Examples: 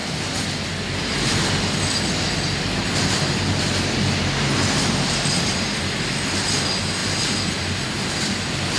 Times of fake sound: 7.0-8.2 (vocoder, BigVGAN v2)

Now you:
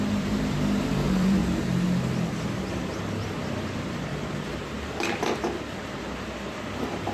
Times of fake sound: 0.0-1.4 (vocoder, BigVGAN v2); 2.7-4.1; 5.8-7.1

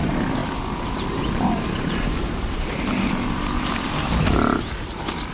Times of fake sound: 0.0-5.3 (vocoder, BigVGAN v2)

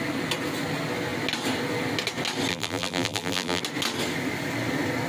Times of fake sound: 2.5-3.6 (vocoder, BigVGAN v2)

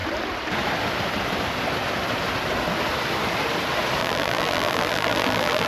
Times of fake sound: 4.0-5.7 (vocoder, BigVGAN v2)

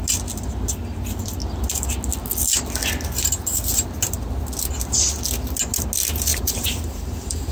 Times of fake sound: 6.3-7.5 (vocoder, BigVGAN v2)